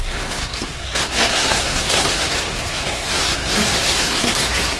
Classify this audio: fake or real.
fake